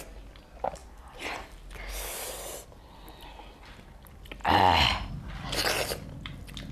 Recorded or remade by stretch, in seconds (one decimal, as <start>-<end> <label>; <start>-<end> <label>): 0.0-6.7 recorded